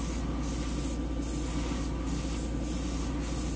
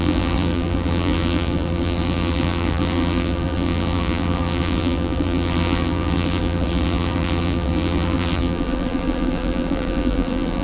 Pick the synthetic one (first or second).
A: second